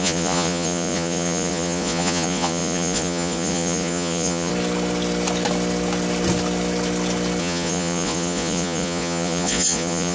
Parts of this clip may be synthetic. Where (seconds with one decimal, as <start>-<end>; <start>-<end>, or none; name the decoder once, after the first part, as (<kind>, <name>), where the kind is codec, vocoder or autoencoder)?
0.0-4.5 (vocoder, Vocos); 7.4-10.1